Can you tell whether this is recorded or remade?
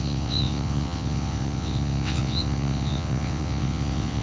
remade